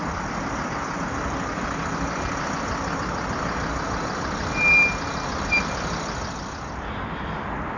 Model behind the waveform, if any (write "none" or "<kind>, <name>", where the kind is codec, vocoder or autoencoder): none